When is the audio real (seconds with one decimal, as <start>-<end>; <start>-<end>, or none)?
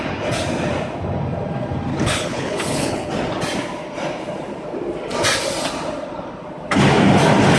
0.0-1.9; 3.1-7.6